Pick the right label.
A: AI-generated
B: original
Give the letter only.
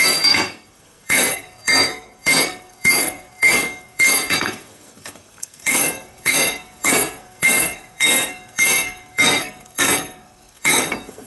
A